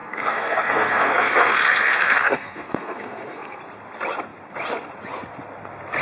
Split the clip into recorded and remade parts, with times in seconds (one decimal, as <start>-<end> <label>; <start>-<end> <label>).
0.0-3.6 remade; 3.6-6.0 recorded